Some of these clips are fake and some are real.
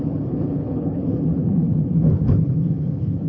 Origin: fake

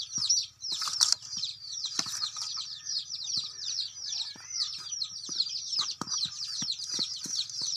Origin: fake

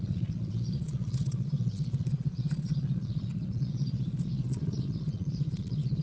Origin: fake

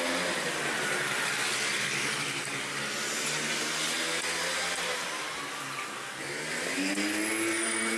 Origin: real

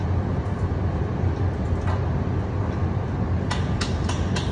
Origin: real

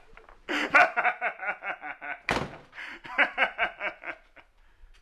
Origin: real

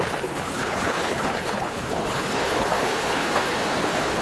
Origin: fake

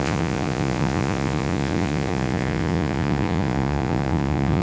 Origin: fake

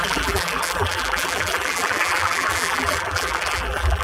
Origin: fake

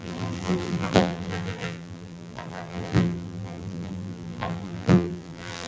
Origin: fake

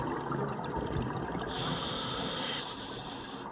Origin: real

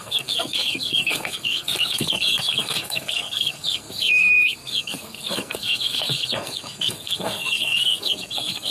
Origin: fake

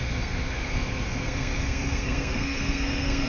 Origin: fake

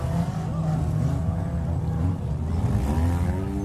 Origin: real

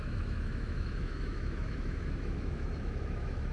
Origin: fake